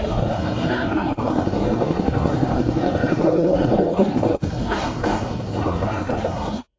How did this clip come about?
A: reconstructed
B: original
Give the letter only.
A